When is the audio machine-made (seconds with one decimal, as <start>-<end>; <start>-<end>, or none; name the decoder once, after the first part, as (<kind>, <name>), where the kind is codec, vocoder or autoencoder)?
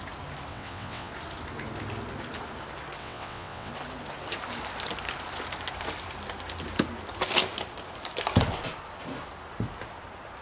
0.5-1.1 (vocoder, WaveNeXt); 3.0-3.7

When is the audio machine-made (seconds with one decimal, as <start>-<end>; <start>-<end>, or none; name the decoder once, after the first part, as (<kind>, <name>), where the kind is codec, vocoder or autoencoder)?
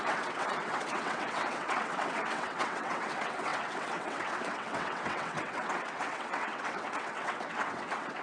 0.0-8.2 (vocoder, WaveNeXt)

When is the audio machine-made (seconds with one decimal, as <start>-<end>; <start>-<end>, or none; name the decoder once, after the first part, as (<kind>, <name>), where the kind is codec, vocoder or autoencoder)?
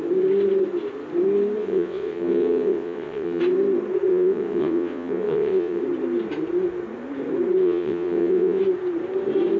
1.6-3.4 (vocoder, WaveNeXt); 4.1-5.8; 7.6-8.6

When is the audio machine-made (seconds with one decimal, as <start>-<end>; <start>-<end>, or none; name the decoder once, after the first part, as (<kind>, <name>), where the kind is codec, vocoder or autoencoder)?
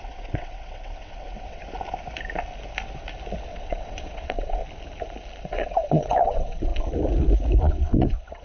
0.0-1.6 (vocoder, WaveNeXt); 3.5-4.6; 5.4-6.7; 7.6-8.4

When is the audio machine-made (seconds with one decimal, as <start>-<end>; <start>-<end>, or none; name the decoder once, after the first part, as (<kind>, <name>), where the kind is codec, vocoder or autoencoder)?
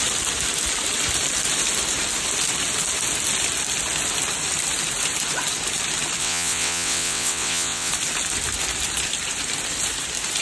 6.2-7.9 (vocoder, WaveNeXt)